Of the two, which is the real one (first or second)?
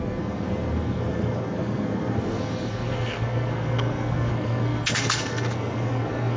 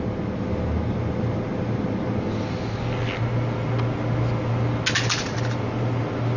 second